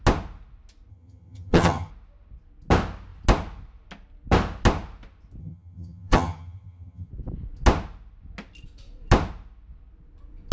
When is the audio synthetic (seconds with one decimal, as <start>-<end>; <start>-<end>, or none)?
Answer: 0.9-1.9; 5.4-7.1